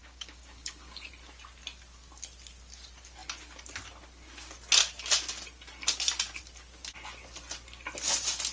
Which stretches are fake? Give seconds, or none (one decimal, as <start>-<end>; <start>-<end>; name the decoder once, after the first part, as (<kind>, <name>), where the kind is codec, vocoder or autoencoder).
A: 0.0-1.1 (codec, DAC)